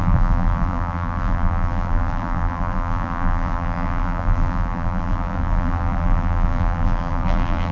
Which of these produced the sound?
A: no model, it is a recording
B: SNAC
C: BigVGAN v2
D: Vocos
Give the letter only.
C